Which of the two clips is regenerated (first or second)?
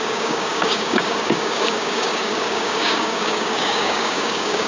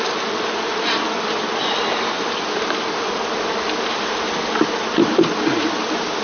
first